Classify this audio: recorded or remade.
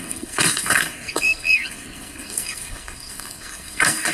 remade